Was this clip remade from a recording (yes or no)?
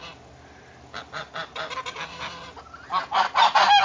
no